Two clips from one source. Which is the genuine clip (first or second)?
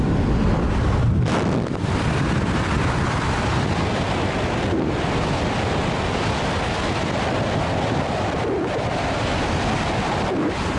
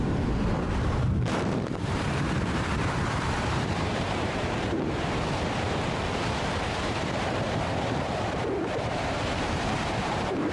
first